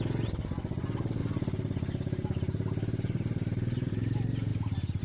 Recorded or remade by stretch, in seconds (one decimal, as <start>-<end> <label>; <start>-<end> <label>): 0.0-1.2 recorded; 1.2-3.9 remade; 3.9-5.0 recorded